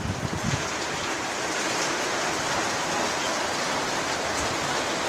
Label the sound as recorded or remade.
recorded